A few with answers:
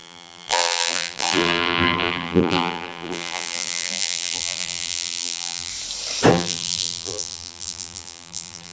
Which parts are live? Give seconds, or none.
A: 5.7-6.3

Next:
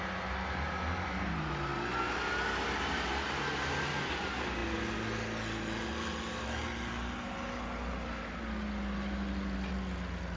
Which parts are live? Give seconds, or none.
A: 0.0-10.4